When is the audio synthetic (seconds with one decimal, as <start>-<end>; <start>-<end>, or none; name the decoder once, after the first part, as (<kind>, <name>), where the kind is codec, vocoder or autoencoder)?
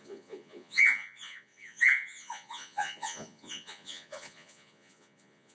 0.0-5.5 (vocoder, Vocos)